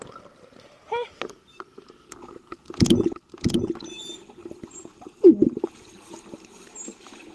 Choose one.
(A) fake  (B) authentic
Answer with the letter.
B